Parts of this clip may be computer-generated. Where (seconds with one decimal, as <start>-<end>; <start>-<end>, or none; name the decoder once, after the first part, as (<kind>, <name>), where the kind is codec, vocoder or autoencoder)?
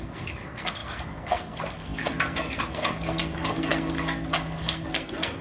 0.0-5.4 (codec, SNAC)